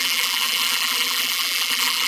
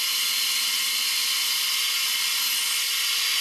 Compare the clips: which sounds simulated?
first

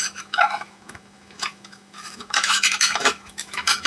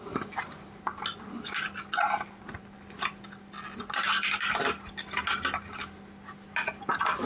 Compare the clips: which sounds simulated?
first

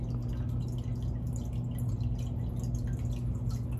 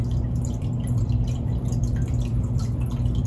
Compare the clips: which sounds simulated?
second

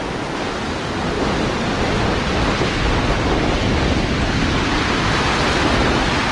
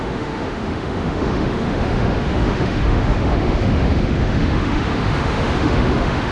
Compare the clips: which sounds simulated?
second